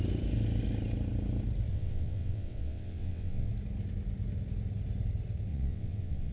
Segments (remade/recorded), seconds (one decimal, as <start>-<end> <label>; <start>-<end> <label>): 0.0-1.7 recorded; 1.7-3.5 remade; 3.5-5.5 recorded; 5.5-6.3 remade